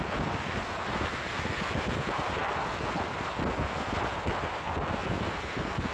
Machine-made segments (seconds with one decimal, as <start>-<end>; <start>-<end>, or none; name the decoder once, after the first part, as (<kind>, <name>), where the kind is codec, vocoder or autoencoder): none